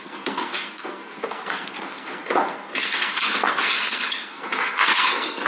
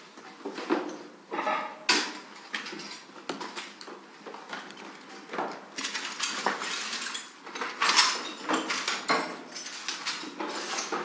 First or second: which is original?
second